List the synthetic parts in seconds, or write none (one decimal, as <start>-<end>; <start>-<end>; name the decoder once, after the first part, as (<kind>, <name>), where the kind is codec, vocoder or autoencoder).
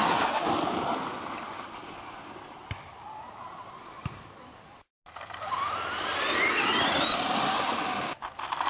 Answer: none